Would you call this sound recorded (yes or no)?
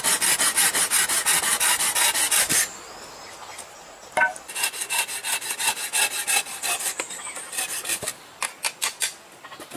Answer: yes